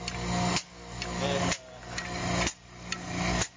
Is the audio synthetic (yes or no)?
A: no